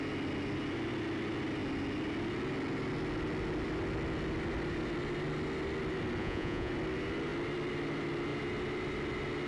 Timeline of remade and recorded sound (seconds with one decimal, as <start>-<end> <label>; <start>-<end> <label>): 0.0-6.2 recorded; 6.2-6.7 remade; 6.7-9.5 recorded